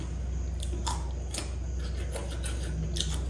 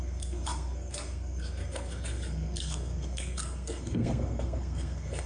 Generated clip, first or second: second